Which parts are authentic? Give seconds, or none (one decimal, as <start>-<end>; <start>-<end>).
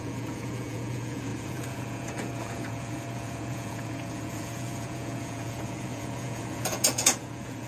none